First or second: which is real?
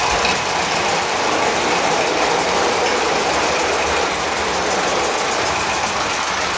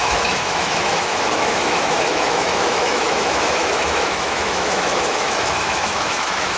first